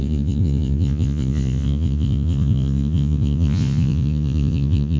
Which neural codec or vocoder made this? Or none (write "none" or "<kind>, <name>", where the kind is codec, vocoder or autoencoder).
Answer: vocoder, Vocos